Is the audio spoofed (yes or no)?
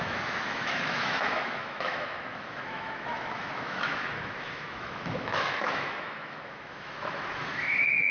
yes